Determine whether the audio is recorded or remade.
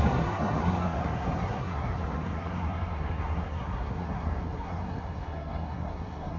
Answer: remade